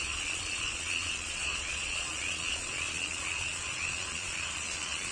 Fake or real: fake